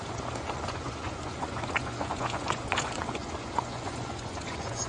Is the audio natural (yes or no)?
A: no